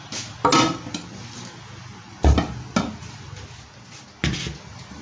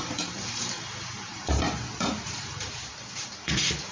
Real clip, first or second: first